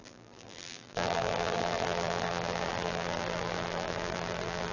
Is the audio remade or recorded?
remade